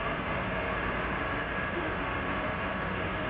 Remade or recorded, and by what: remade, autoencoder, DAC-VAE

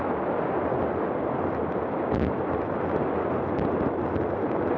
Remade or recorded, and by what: recorded